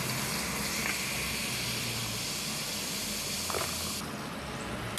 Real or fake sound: real